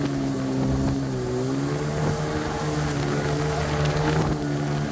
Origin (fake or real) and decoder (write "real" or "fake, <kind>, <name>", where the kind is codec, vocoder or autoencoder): real